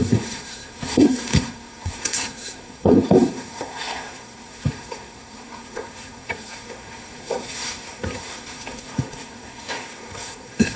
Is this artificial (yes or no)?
yes